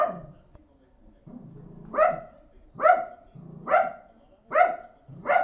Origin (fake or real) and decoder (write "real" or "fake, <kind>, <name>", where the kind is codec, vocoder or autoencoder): real